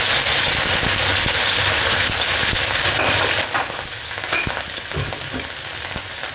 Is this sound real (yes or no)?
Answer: yes